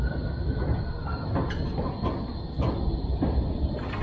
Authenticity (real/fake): real